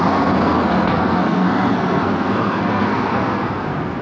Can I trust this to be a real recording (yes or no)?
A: no